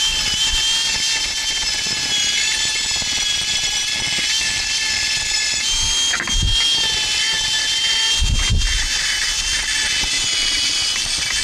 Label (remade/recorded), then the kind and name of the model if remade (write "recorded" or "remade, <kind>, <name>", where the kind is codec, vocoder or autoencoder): recorded